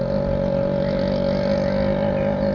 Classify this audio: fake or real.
real